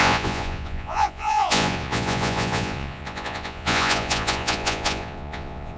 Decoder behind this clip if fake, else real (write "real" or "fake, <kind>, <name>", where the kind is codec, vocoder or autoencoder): fake, vocoder, Vocos